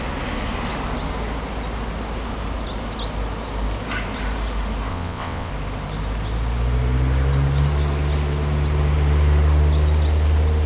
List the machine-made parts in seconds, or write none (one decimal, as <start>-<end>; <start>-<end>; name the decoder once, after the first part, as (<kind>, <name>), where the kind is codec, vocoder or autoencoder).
4.9-5.5 (vocoder, WaveNeXt)